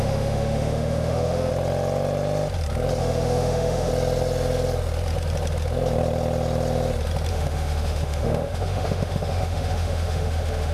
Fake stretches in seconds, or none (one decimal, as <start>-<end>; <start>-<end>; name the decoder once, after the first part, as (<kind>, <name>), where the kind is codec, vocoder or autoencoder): 0.0-1.5 (autoencoder, DAC-VAE); 3.0-3.9; 7.3-10.7